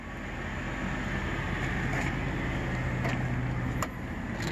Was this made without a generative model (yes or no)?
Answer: yes